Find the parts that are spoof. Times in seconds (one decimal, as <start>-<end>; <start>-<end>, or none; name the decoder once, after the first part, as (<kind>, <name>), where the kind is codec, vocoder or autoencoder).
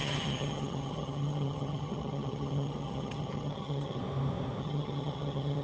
0.0-4.0 (vocoder, HiFi-GAN); 4.6-5.6